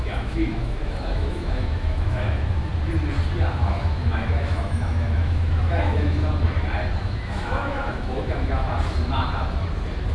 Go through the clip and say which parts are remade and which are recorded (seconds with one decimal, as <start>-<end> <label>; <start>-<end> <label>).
0.0-2.7 remade; 2.7-3.5 recorded; 3.5-6.2 remade; 6.2-7.0 recorded; 7.0-8.7 remade; 8.7-10.1 recorded